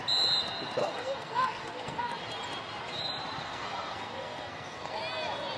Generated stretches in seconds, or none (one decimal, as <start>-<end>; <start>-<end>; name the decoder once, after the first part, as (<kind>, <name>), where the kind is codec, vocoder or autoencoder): 0.8-2.2 (codec, SNAC); 3.4-5.0